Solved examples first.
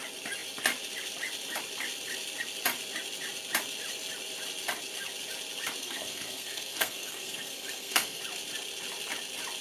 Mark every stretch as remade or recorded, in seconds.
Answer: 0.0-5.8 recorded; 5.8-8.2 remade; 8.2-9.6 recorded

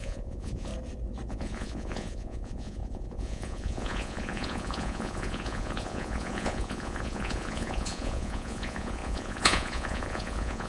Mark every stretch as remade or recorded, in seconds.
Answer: 0.0-0.7 remade; 0.7-1.3 recorded; 1.3-10.7 remade

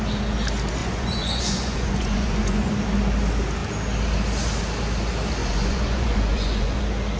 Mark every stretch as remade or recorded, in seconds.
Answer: 0.0-0.8 recorded; 0.8-2.7 remade; 2.7-5.4 recorded; 5.4-6.8 remade; 6.8-7.2 recorded

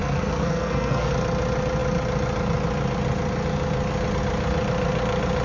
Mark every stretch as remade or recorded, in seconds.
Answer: 0.0-1.1 remade; 1.1-5.4 recorded

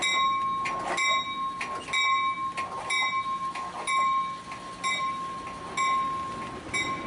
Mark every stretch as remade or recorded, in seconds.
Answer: 0.0-7.1 recorded

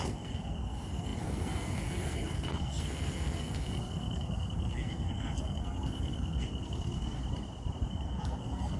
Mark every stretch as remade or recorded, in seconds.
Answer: 0.0-7.2 remade; 7.2-7.9 recorded; 7.9-8.8 remade